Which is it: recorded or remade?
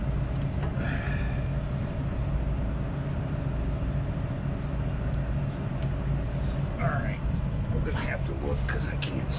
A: recorded